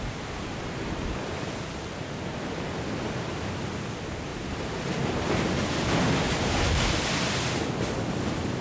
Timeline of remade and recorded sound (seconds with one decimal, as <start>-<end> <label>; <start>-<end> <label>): 0.0-4.3 recorded; 4.3-6.8 remade; 6.8-8.6 recorded